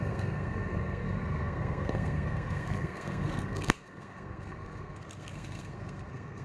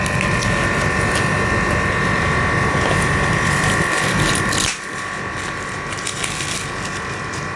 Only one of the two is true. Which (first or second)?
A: second